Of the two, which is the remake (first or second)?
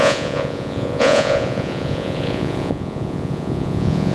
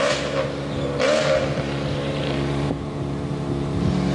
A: first